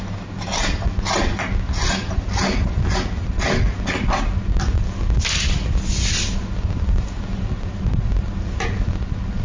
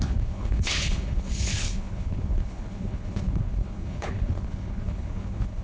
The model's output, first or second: second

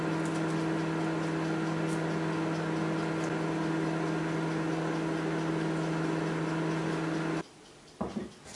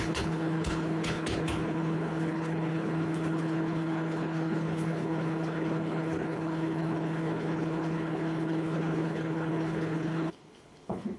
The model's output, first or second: second